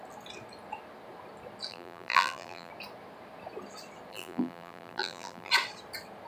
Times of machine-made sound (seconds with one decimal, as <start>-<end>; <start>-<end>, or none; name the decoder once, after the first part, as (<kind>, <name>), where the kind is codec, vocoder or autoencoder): 1.7-2.7 (vocoder, BigVGAN v2); 4.1-5.5